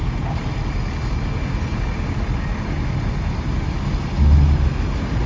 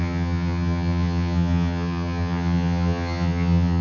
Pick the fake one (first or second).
second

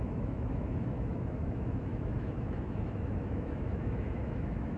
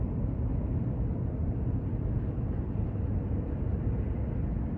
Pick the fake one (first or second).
first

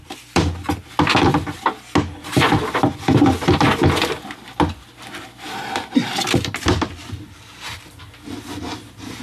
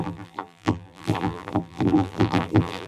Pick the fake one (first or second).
second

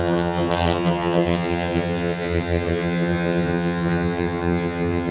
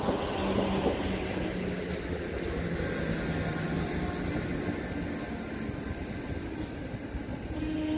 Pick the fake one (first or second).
first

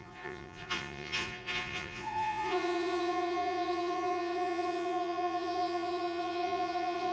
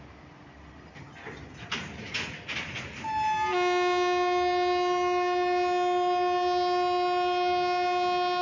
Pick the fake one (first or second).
first